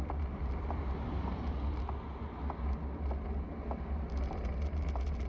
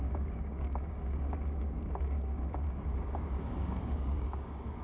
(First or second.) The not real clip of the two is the second